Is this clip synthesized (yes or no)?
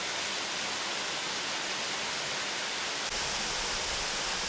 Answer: no